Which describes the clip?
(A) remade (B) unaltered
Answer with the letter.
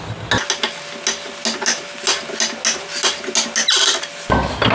B